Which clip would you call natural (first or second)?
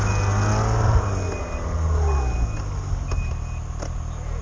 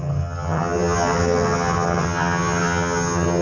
first